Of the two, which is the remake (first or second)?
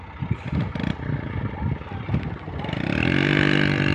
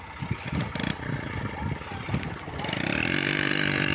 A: second